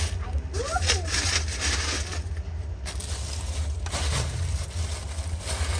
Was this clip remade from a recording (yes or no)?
no